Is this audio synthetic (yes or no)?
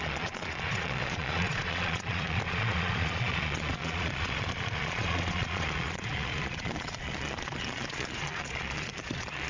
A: yes